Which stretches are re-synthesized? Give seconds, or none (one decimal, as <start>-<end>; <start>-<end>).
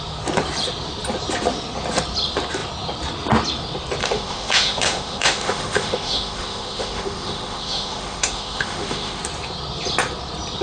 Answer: 4.0-9.2